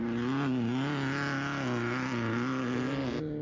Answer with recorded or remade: recorded